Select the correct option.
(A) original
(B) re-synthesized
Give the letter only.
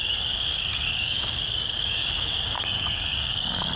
B